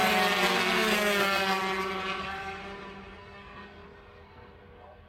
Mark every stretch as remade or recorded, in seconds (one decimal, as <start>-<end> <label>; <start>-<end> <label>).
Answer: 0.0-0.5 recorded; 0.5-1.6 remade; 1.6-2.2 recorded; 2.2-2.6 remade; 2.6-3.2 recorded; 3.2-5.1 remade